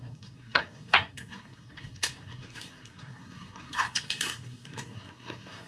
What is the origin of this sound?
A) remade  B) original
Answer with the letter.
A